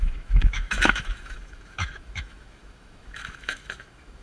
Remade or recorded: remade